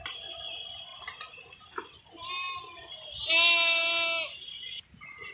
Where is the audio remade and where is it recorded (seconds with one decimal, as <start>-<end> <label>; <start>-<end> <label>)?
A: 0.0-5.3 recorded